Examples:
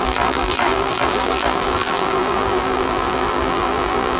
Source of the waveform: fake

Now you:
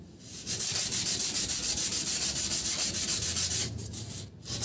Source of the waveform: fake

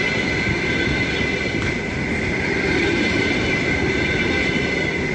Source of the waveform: real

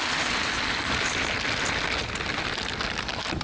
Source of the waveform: real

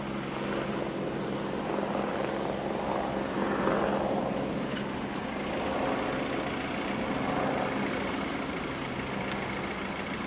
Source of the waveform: real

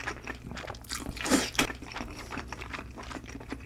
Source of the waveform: fake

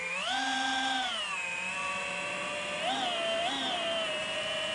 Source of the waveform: fake